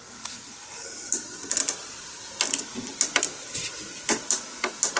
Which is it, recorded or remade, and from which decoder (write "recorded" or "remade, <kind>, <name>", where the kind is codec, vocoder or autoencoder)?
recorded